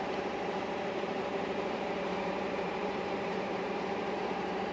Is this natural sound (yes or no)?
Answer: no